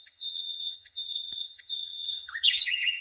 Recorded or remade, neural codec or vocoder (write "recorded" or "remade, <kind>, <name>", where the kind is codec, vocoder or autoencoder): remade, vocoder, HiFi-GAN